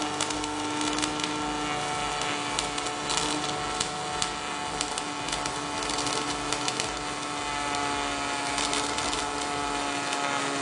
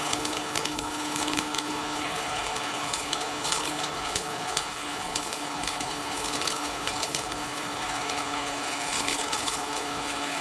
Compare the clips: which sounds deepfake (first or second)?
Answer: second